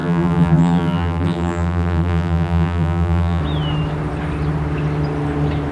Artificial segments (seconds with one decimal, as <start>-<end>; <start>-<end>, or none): 0.0-3.4